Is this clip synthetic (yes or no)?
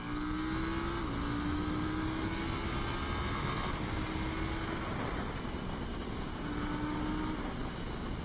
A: no